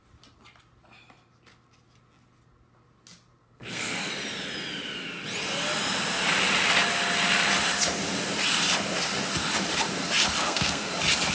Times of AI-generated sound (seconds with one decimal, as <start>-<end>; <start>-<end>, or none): 3.4-4.1; 10.4-10.9